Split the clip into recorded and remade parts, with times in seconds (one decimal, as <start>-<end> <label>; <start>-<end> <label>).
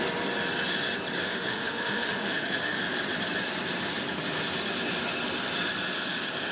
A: 0.0-1.2 recorded; 1.2-2.8 remade; 2.8-6.5 recorded